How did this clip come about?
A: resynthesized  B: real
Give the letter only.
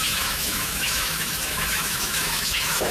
A